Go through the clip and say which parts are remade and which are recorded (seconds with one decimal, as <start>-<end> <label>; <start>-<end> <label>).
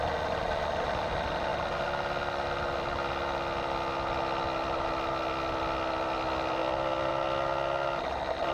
0.0-8.5 recorded